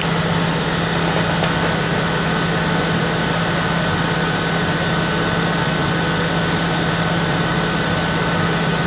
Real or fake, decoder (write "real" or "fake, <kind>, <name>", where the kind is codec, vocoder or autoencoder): real